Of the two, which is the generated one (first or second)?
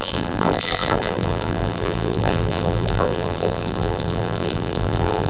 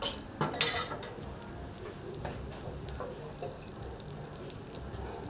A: first